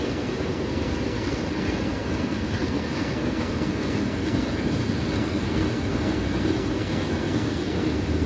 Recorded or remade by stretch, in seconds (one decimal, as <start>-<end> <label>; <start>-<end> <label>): 0.0-8.3 remade